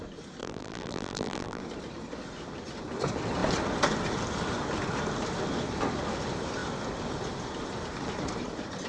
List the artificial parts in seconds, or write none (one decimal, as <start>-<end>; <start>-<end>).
0.4-1.6